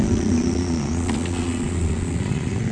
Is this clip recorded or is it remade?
remade